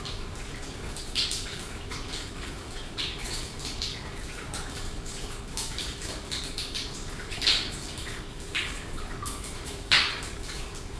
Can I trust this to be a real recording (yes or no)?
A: no